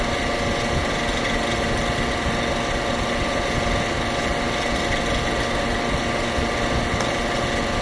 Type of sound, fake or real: real